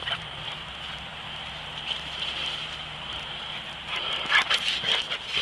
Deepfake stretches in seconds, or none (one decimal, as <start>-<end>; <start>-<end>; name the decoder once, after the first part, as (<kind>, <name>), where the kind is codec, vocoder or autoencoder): none